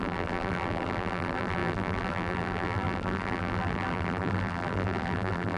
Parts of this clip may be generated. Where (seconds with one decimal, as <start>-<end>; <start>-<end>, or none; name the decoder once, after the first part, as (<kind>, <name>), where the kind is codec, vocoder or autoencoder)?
0.0-5.6 (vocoder, BigVGAN v2)